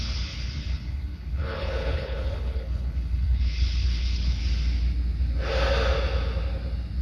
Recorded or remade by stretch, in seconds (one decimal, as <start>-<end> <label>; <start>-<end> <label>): 0.0-4.4 remade; 4.4-7.0 recorded